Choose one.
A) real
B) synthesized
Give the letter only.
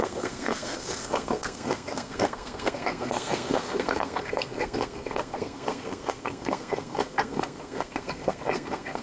B